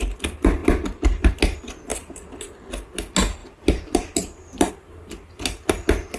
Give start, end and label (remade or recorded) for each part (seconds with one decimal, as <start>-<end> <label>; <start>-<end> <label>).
0.0-0.6 recorded; 0.6-1.3 remade; 1.3-1.9 recorded; 1.9-2.5 remade; 2.5-3.4 recorded; 3.4-4.7 remade; 4.7-6.2 recorded